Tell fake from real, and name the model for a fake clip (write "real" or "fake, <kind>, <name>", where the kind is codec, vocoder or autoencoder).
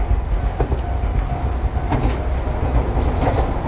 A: real